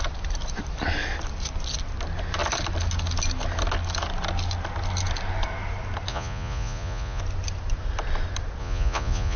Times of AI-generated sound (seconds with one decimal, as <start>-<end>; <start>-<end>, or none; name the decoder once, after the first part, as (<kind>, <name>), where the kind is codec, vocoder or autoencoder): 6.1-7.2 (vocoder, Vocos); 8.6-9.4